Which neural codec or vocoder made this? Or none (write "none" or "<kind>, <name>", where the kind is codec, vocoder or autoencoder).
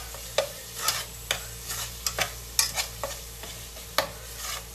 none